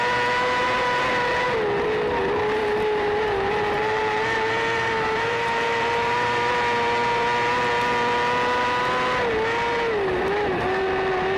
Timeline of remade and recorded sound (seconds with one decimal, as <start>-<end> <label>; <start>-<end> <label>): 0.0-2.6 recorded; 2.6-6.5 remade; 6.5-11.4 recorded

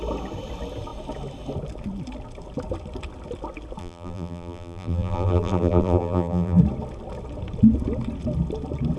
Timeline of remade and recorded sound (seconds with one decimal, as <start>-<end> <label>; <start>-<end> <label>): 0.0-3.8 recorded; 3.8-6.6 remade; 6.6-9.0 recorded